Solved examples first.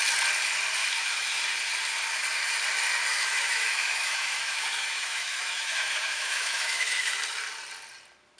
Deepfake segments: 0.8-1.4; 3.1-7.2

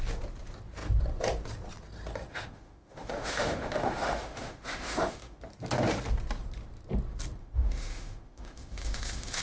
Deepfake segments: 2.3-5.4; 7.4-9.4

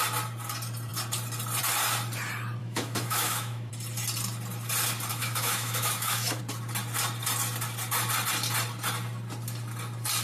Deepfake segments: 2.6-3.7; 5.1-6.4

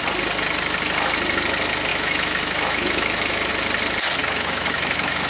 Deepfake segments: 1.9-3.5; 4.2-5.3

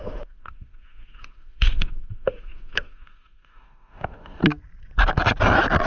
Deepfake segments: 0.0-4.4

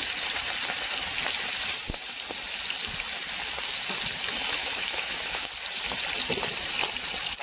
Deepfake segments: 4.6-5.5

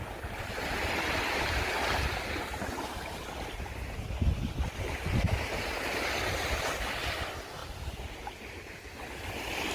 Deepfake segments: none